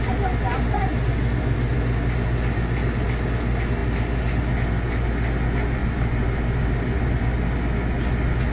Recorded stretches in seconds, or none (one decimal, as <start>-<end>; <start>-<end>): 0.0-5.8; 7.2-8.5